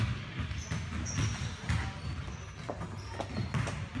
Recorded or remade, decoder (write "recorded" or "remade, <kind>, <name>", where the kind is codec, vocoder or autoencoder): recorded